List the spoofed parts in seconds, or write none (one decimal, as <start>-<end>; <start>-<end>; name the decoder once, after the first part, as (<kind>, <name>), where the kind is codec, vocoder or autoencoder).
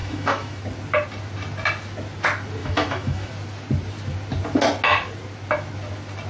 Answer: 0.0-0.6 (autoencoder, DAC-VAE); 2.6-3.3